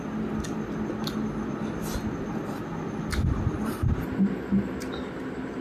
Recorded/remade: recorded